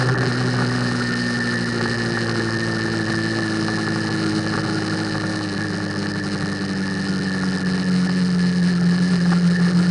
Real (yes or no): yes